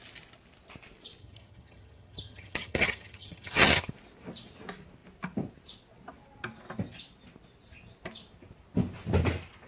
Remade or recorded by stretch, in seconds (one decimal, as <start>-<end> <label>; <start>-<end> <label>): 0.0-1.2 recorded; 1.2-3.9 remade; 3.9-9.7 recorded